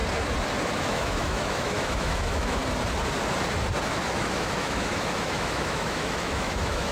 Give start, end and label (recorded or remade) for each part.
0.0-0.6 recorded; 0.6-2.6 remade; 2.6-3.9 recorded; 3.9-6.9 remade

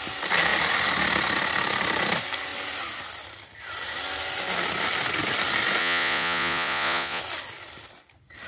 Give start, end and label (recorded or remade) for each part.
0.0-5.8 recorded; 5.8-7.2 remade; 7.2-8.5 recorded

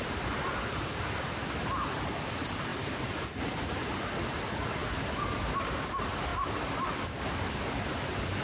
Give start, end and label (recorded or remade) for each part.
0.0-8.4 recorded

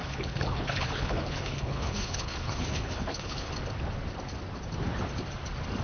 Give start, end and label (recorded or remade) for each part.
0.0-3.5 remade; 3.5-5.8 recorded